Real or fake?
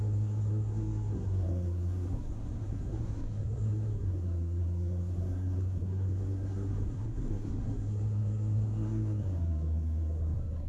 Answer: fake